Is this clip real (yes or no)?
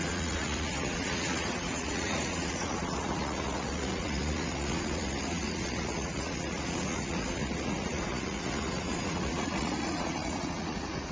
no